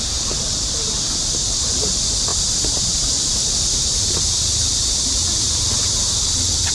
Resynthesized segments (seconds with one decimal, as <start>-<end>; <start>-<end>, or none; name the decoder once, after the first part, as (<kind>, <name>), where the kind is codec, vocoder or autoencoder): 0.0-6.7 (vocoder, BigVGAN v2)